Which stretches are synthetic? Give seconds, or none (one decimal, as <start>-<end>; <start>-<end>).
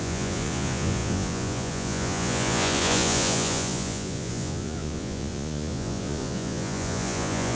0.0-7.6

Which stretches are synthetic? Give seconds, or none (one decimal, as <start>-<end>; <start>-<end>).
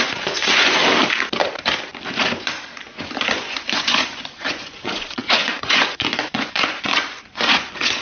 0.0-0.8; 2.3-8.0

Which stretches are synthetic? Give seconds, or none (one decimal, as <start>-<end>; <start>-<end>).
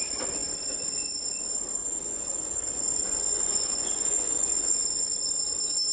1.8-5.3